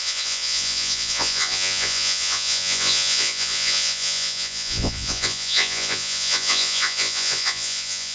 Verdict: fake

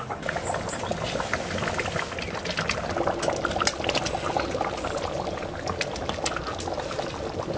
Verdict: real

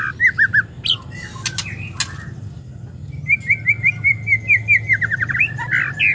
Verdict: real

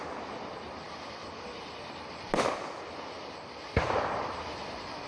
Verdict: real